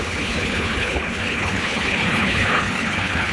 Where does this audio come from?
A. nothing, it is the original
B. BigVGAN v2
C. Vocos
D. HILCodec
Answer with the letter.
D